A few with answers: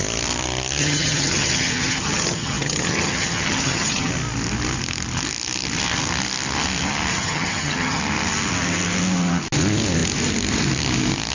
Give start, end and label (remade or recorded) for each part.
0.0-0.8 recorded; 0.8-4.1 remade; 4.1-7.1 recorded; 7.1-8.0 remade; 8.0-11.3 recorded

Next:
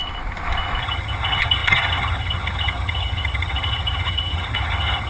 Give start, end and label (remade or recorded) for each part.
0.0-0.8 recorded; 0.8-5.1 remade

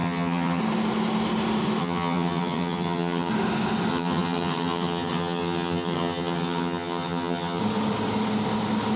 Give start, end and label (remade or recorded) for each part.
0.0-0.6 remade; 0.6-1.8 recorded; 1.8-3.3 remade; 3.3-3.9 recorded; 3.9-7.6 remade; 7.6-9.0 recorded

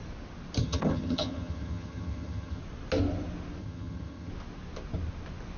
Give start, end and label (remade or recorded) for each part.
0.0-0.6 recorded; 0.6-2.6 remade; 2.6-3.6 recorded; 3.6-4.3 remade; 4.3-5.6 recorded

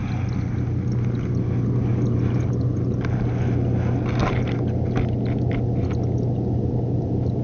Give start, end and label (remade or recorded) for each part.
0.0-7.4 recorded

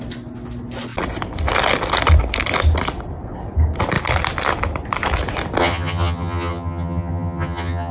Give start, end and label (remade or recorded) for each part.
0.0-5.6 recorded; 5.6-7.9 remade

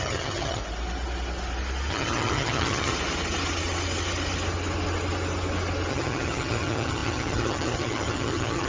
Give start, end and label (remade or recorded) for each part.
0.0-0.6 remade; 0.6-1.9 recorded; 1.9-2.9 remade; 2.9-5.9 recorded; 5.9-8.7 remade